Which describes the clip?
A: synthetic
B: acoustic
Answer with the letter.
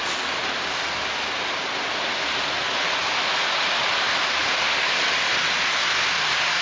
B